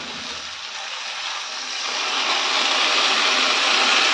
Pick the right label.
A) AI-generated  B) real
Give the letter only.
B